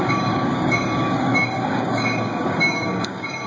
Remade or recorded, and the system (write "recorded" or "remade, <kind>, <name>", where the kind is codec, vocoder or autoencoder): remade, codec, DAC